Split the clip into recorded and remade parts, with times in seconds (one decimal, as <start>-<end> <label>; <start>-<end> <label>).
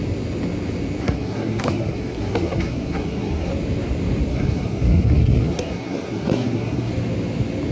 0.0-1.0 recorded; 1.0-3.5 remade; 3.5-4.3 recorded; 4.3-6.9 remade; 6.9-7.7 recorded